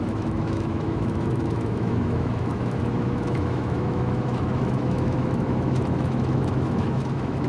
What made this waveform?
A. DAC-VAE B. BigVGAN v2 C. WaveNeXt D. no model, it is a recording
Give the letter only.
A